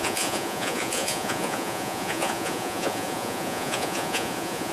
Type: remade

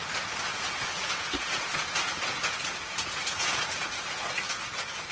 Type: remade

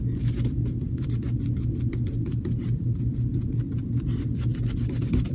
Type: recorded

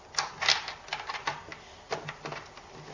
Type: recorded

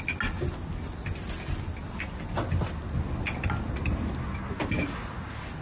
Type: recorded